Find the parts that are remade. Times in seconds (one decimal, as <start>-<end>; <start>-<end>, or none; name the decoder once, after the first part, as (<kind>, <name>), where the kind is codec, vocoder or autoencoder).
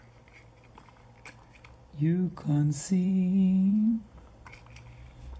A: 2.3-4.5 (vocoder, BigVGAN v2)